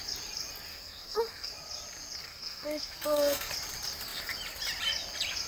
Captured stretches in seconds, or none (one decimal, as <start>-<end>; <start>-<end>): 0.0-0.7; 1.5-2.2; 3.5-5.5